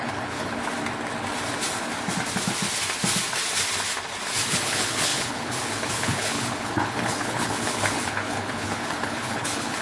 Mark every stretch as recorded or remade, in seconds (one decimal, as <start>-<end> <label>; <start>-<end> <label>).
0.0-0.6 remade; 0.6-4.5 recorded; 4.5-9.8 remade